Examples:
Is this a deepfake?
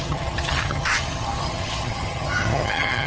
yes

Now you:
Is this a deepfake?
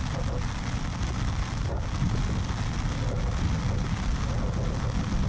no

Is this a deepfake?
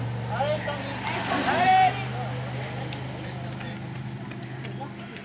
no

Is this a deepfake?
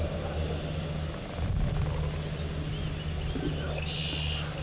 no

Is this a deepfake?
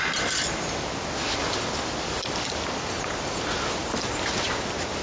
no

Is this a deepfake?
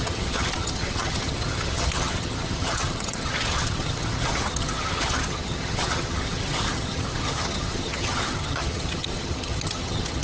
yes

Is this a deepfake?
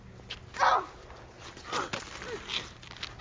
no